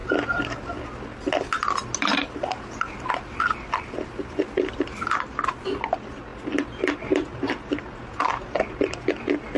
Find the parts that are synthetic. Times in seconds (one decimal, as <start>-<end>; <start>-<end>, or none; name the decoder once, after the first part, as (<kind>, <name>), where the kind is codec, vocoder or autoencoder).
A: none

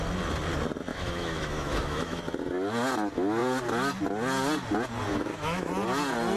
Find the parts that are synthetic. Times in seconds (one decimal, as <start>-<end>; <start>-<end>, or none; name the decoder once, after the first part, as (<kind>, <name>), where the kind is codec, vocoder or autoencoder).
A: 0.9-2.2 (autoencoder, DAC-VAE); 5.1-5.7